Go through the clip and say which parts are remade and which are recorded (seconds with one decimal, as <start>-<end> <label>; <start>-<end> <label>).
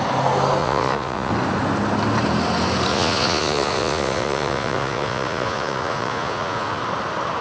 0.0-0.6 recorded; 0.6-1.3 remade; 1.3-2.9 recorded; 2.9-6.8 remade; 6.8-7.4 recorded